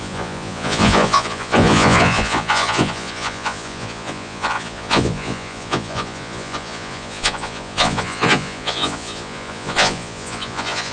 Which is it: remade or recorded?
remade